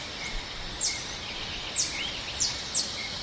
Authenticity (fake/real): real